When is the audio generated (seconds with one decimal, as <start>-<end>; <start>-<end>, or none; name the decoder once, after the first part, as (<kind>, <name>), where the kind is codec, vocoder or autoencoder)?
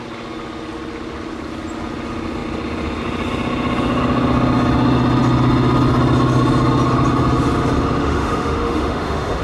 8.0-9.4 (autoencoder, DAC-VAE)